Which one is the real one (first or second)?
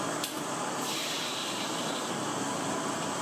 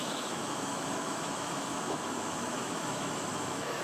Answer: first